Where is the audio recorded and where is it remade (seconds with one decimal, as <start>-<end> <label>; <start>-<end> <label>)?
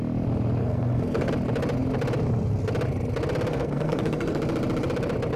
0.0-0.6 recorded; 0.6-1.3 remade; 1.3-3.5 recorded; 3.5-4.4 remade; 4.4-5.4 recorded